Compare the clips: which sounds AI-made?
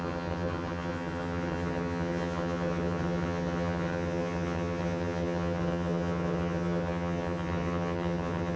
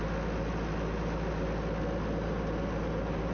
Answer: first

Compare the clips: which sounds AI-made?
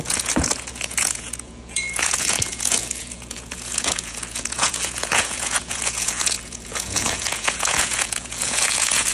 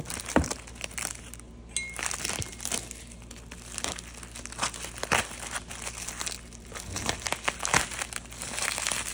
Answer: first